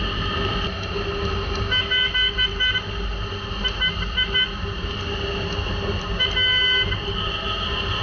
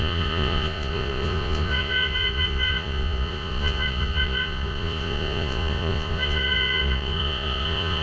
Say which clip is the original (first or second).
first